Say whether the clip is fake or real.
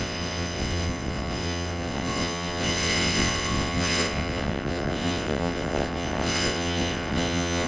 fake